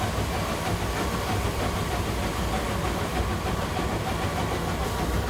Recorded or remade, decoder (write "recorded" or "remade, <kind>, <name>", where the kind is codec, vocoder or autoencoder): recorded